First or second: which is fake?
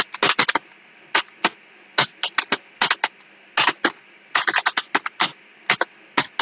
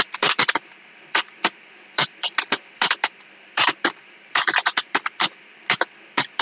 second